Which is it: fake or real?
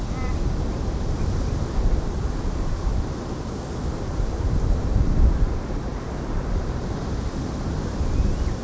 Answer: real